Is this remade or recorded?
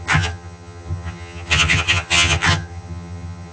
remade